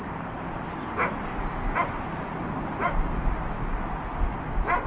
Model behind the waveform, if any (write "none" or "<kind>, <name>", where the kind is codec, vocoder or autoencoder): none